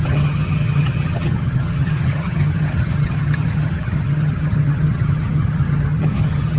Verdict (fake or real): fake